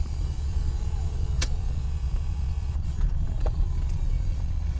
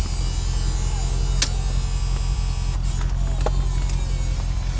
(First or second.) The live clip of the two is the second